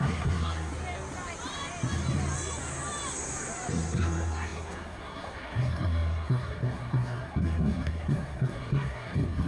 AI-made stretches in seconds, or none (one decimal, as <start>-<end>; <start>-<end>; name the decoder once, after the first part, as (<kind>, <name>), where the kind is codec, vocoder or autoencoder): 0.0-0.7 (codec, SNAC); 3.7-9.5